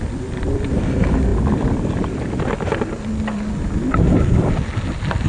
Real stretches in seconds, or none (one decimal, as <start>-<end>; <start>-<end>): 0.0-5.3